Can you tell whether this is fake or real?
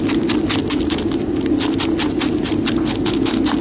real